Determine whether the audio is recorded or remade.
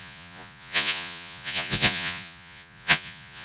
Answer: remade